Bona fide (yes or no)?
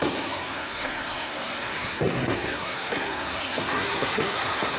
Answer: no